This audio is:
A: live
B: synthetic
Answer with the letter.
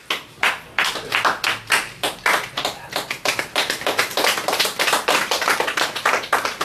A